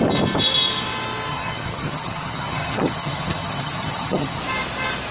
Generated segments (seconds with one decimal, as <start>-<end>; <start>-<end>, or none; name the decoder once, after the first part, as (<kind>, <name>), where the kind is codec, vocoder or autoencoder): 1.3-4.4 (vocoder, HiFi-GAN)